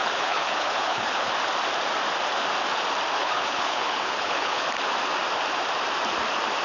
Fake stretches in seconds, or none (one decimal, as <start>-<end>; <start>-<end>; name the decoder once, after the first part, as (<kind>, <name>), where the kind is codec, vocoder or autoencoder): 0.0-1.3 (codec, HILCodec); 3.2-4.7